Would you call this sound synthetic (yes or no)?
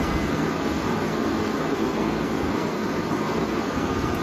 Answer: yes